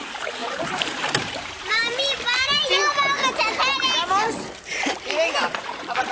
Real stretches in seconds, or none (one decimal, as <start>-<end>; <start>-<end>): 1.8-4.9

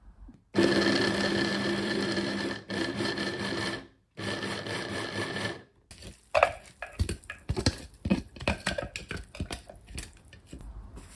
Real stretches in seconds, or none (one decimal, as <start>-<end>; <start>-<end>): 0.0-1.5; 3.4-11.1

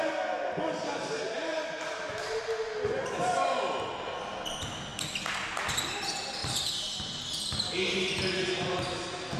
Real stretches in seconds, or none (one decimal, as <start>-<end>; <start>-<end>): 0.0-1.5; 2.4-6.4; 7.4-9.4

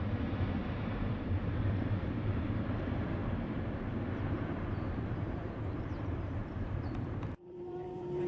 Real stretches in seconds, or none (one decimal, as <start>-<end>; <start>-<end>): 0.0-0.6; 1.5-3.2